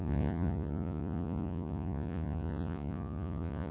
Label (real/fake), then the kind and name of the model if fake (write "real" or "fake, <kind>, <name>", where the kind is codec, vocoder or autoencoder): fake, vocoder, Vocos